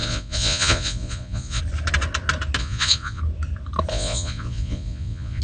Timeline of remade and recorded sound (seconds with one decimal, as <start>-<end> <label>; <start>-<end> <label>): 0.0-1.6 remade; 1.6-2.6 recorded; 2.6-3.2 remade; 3.2-3.9 recorded; 3.9-5.4 remade